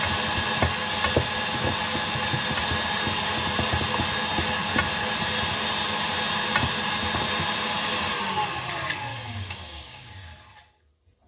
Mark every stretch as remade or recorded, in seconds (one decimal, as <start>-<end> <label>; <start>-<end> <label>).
0.0-9.1 recorded; 9.1-10.1 remade; 10.1-11.3 recorded